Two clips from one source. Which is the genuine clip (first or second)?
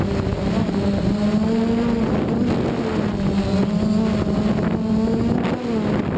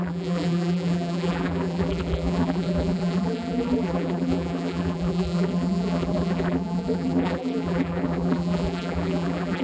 first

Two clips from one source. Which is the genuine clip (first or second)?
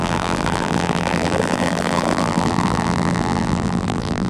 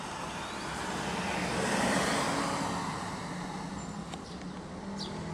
second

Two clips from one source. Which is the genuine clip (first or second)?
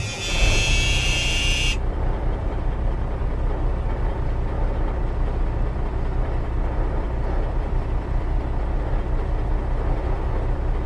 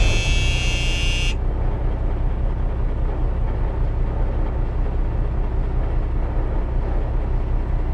second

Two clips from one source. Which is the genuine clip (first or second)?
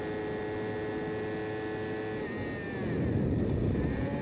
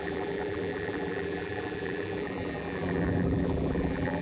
first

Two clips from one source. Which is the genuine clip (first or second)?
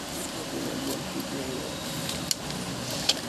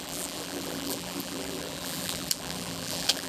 first